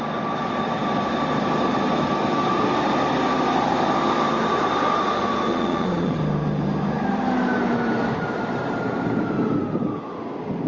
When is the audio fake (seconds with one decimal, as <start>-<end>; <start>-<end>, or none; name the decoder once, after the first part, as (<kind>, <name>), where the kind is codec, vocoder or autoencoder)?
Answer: 5.5-6.2 (vocoder, Vocos)